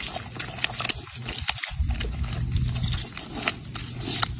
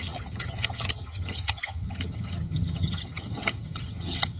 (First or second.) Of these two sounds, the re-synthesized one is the second